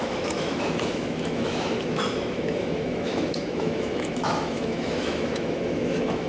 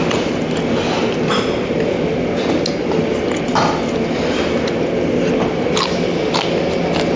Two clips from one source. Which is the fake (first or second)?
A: first